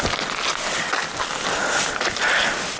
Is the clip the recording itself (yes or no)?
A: yes